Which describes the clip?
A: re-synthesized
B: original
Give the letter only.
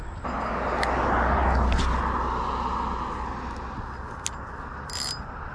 B